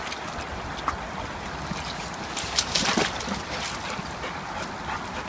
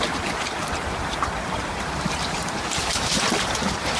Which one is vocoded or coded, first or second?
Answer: second